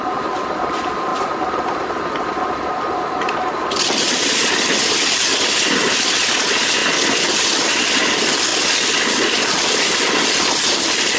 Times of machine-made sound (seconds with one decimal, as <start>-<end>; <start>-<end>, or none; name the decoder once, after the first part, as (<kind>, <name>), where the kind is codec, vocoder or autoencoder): none